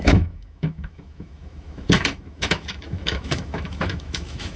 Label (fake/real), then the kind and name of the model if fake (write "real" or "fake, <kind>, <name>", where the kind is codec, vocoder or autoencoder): fake, autoencoder, DAC-VAE